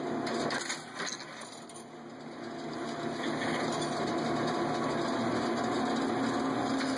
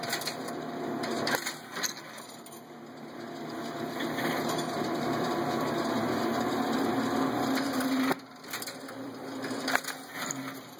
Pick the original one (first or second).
first